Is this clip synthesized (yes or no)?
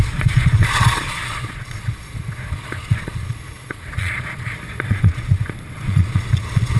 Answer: yes